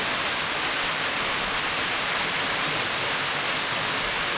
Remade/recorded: recorded